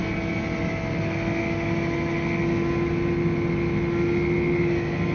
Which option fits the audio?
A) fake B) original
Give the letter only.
B